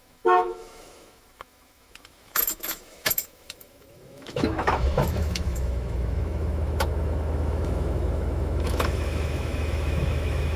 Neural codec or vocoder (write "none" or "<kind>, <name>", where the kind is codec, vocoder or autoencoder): autoencoder, DAC-VAE